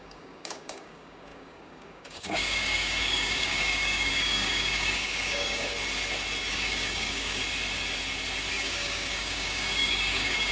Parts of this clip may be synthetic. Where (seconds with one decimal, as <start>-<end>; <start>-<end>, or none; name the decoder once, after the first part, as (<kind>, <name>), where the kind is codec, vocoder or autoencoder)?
0.0-5.7 (codec, DAC); 6.5-7.4; 8.5-10.5